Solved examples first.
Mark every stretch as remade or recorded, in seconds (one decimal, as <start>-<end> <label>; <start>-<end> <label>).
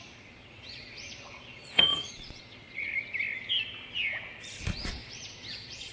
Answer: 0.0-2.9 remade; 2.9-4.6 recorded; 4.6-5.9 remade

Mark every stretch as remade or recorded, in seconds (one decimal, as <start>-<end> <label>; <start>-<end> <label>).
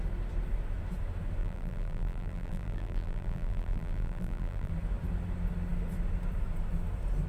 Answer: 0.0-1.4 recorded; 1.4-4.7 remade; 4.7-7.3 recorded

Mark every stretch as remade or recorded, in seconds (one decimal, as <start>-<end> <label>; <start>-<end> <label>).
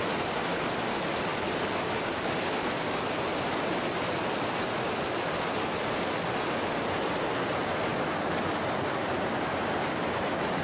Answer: 0.0-10.6 recorded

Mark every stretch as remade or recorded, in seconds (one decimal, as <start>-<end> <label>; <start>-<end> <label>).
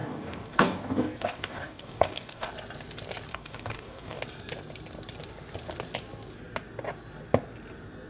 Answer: 0.0-2.5 remade; 2.5-3.3 recorded; 3.3-4.2 remade; 4.2-8.1 recorded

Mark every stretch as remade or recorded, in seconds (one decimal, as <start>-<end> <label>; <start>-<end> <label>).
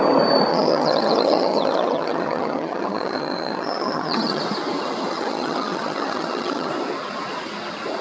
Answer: 0.0-0.5 recorded; 0.5-4.4 remade; 4.4-5.1 recorded; 5.1-6.7 remade; 6.7-8.0 recorded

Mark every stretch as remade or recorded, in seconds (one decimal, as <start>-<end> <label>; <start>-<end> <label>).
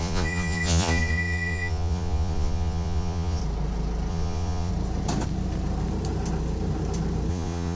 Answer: 0.0-3.4 remade; 3.4-4.1 recorded; 4.1-4.7 remade; 4.7-7.3 recorded; 7.3-7.8 remade